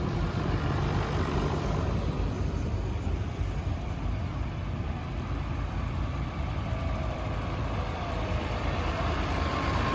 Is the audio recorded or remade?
remade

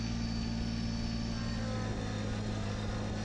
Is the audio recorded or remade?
recorded